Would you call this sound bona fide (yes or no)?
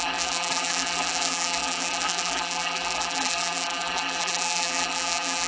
no